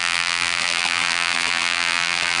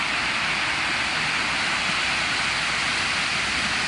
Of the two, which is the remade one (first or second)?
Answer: first